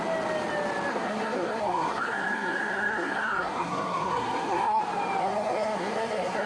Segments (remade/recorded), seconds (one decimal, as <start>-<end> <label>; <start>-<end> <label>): 0.0-0.9 recorded; 0.9-4.8 remade; 4.8-5.2 recorded; 5.2-6.5 remade